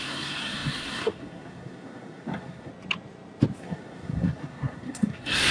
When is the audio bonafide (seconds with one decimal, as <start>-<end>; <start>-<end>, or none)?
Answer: 2.7-3.6

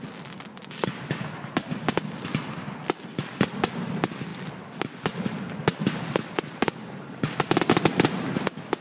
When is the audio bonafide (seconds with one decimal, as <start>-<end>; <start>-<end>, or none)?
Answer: 0.0-4.3; 5.0-8.8

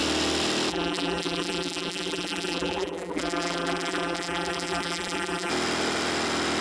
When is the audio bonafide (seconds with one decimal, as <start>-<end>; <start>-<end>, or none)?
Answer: 0.0-0.7; 5.5-6.6

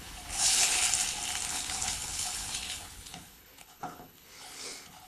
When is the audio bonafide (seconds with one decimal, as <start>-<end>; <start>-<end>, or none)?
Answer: 0.8-1.5

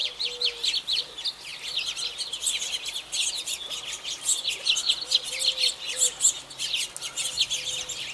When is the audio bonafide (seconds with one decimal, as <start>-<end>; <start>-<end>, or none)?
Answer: 0.0-8.1

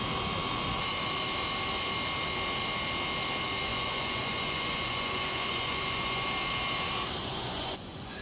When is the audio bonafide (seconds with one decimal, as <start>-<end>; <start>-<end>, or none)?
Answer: 0.0-3.7; 6.3-7.2

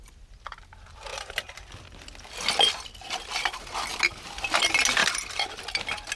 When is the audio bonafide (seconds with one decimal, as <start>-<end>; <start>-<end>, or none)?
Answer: 0.0-1.1; 2.0-5.0; 5.6-6.2